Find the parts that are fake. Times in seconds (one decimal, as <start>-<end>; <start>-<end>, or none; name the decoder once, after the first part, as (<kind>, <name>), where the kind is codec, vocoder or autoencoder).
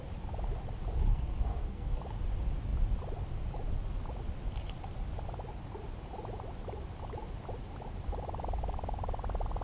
1.1-2.0 (codec, SNAC)